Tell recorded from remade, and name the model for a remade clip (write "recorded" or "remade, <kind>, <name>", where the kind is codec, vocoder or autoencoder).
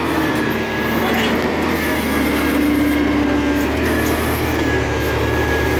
recorded